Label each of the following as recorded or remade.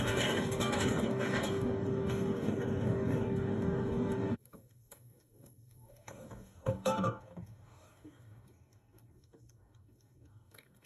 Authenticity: remade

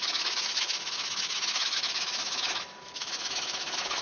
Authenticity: remade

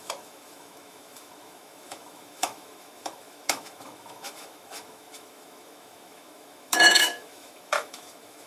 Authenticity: remade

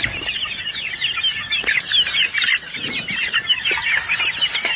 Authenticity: recorded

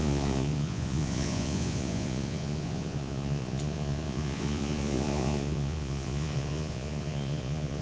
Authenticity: remade